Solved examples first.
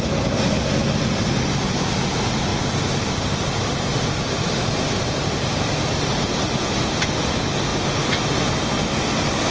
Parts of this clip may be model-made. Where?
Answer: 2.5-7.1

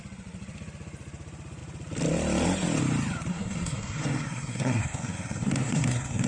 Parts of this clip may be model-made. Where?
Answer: 3.3-6.3

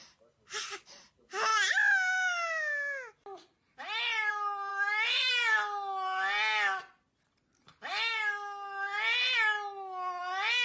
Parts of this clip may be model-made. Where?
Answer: 4.7-5.3

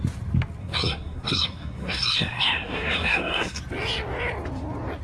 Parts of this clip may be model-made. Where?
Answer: 0.6-3.6

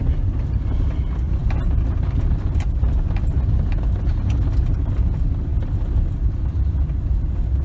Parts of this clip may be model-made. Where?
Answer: none

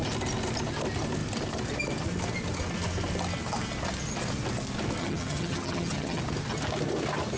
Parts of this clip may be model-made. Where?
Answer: 5.0-6.2

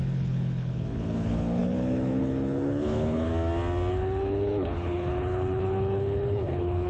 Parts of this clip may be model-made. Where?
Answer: 0.0-3.3; 3.9-6.9

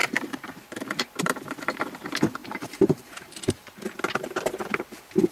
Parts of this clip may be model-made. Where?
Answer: 0.0-0.5; 2.4-3.9